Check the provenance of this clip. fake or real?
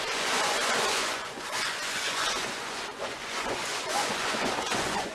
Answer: fake